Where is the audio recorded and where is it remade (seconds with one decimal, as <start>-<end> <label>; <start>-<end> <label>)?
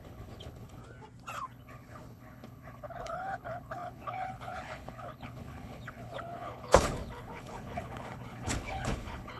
0.0-0.8 remade; 0.8-1.5 recorded; 1.5-9.4 remade